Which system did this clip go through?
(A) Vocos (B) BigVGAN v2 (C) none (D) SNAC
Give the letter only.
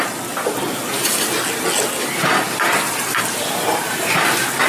C